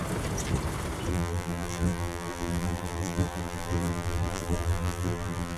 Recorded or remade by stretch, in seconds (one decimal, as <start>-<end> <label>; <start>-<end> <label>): 0.0-1.1 recorded; 1.1-5.6 remade